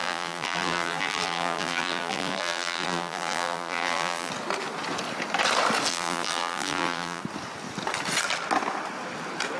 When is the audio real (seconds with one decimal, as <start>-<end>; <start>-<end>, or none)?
4.3-5.9; 7.2-9.6